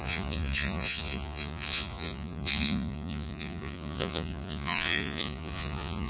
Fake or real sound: fake